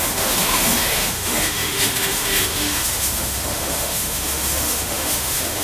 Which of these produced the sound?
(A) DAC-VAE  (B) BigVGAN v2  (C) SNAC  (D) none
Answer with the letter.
A